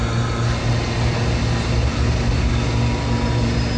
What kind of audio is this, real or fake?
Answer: real